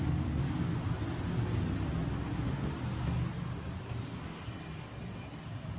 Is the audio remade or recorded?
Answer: recorded